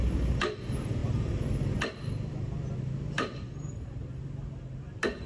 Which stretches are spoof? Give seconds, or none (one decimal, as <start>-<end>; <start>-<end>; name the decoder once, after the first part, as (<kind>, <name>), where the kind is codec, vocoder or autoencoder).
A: none